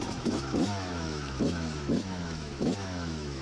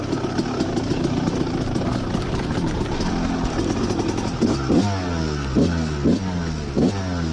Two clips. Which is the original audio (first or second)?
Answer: second